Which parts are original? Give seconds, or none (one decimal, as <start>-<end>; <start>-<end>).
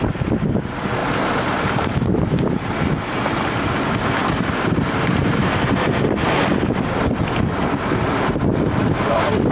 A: 0.0-1.0; 2.9-4.2; 4.8-5.2; 8.0-9.5